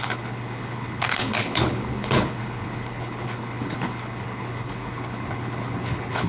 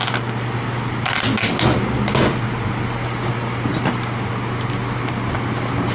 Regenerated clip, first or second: first